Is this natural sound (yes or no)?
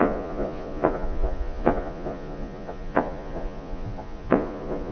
no